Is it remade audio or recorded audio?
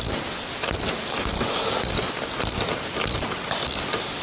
recorded